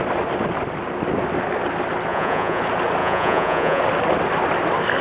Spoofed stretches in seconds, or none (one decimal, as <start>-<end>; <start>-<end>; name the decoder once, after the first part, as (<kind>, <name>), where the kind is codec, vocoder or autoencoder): 2.1-2.6 (vocoder, Vocos); 3.0-3.8